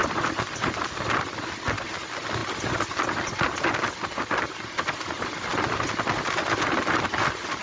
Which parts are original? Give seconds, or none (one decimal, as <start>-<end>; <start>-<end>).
0.0-7.6